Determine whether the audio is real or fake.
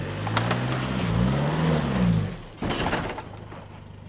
real